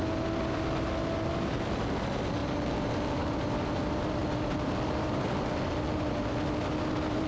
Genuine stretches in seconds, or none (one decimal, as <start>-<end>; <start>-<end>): 0.0-2.4; 3.4-7.3